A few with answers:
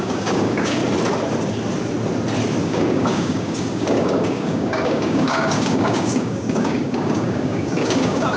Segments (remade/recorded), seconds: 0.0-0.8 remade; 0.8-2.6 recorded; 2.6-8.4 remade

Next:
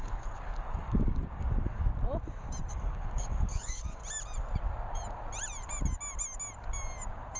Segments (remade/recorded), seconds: 0.0-1.9 remade; 1.9-2.7 recorded; 2.7-4.0 remade; 4.0-7.4 recorded

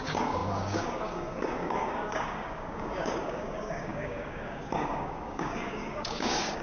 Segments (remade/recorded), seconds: 0.0-6.6 remade

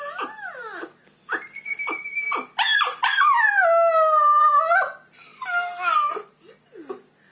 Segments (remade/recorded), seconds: 0.0-7.3 recorded

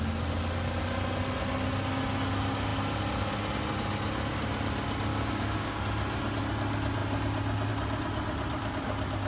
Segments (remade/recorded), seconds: 0.0-5.1 recorded; 5.1-5.8 remade; 5.8-9.3 recorded